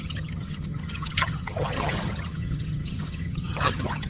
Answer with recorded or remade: remade